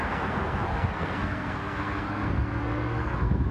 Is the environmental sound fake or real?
fake